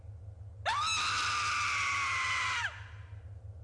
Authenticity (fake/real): real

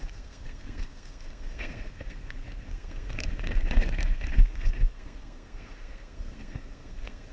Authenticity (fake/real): fake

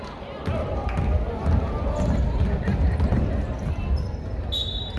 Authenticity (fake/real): real